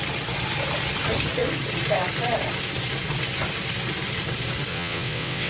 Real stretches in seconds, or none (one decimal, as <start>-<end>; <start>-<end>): 0.0-4.7